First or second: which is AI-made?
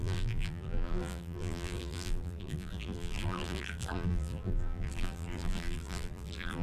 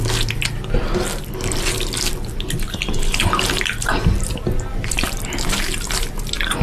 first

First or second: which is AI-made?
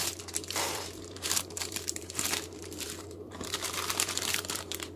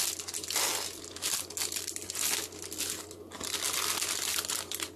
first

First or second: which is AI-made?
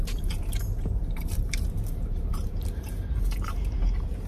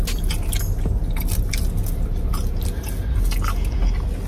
first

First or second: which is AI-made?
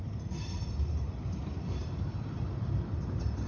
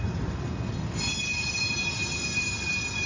first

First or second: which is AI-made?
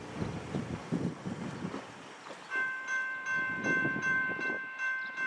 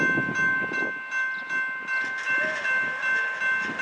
first